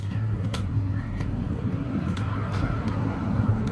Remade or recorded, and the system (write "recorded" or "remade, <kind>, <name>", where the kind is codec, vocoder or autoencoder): remade, codec, SNAC